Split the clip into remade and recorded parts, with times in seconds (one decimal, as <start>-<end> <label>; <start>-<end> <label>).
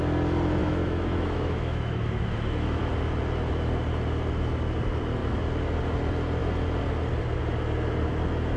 0.0-0.6 recorded; 0.6-2.8 remade; 2.8-8.6 recorded